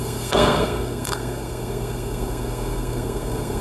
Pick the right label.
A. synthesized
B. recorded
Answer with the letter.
A